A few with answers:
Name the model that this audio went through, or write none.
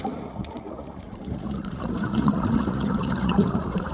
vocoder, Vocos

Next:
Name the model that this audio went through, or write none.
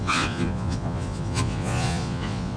vocoder, Vocos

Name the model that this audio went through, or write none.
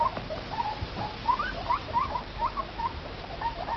vocoder, BigVGAN v2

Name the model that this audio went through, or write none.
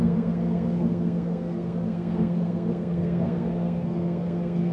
codec, SNAC